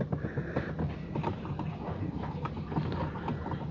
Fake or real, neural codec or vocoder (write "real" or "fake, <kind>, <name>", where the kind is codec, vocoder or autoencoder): real